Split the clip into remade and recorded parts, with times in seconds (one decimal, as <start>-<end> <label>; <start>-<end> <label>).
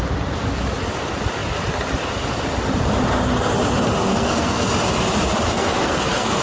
0.0-4.1 recorded; 4.1-4.7 remade; 4.7-5.5 recorded; 5.5-6.4 remade